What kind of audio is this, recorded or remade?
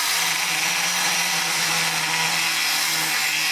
recorded